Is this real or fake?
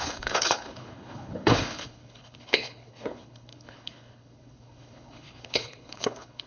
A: fake